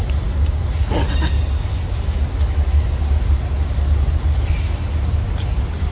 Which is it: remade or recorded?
recorded